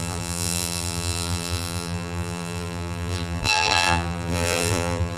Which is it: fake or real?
fake